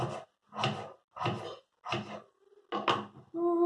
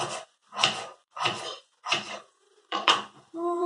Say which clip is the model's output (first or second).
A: second